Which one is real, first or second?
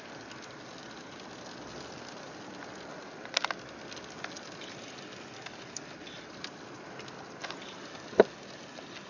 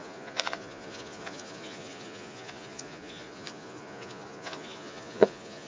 first